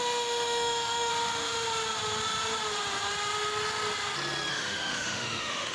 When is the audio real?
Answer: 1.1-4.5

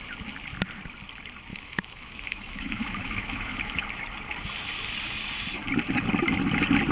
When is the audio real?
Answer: 0.0-1.5; 3.9-6.9

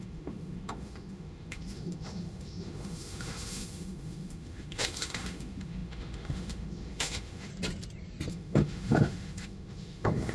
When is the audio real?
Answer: 7.5-8.3

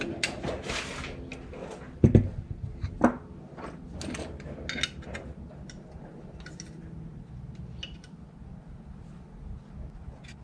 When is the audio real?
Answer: 0.0-10.4

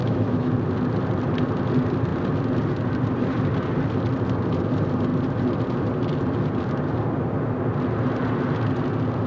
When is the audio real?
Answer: 0.5-9.3

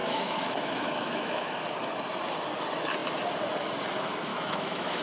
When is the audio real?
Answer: 1.6-4.3

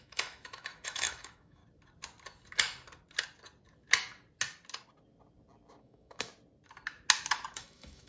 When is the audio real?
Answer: 1.6-5.8; 6.3-7.5